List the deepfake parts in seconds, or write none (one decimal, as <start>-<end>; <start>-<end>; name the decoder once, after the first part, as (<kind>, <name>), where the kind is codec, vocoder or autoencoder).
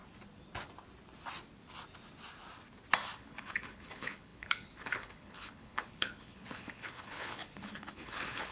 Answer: 3.2-8.5 (codec, HILCodec)